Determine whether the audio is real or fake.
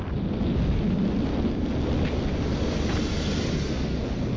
real